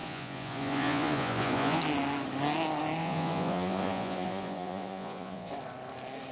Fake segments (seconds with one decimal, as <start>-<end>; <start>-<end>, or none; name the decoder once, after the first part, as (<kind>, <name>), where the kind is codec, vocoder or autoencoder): 0.0-1.8 (vocoder, Vocos); 3.0-5.5